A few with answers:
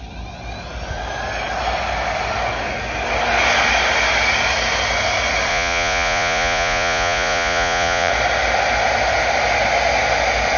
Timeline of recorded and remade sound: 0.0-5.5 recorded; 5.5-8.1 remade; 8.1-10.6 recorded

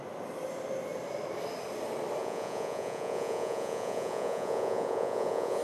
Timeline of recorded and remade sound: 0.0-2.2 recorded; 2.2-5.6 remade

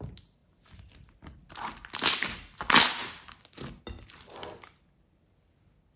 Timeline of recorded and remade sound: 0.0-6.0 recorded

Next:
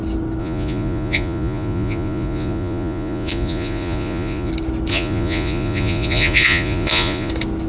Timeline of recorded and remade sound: 0.0-0.4 recorded; 0.4-4.5 remade; 4.5-4.9 recorded; 4.9-7.3 remade; 7.3-7.7 recorded